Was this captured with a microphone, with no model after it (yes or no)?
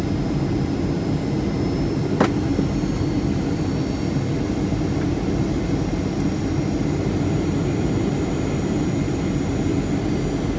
yes